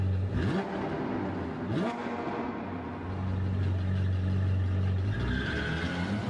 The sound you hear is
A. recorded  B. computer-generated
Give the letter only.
A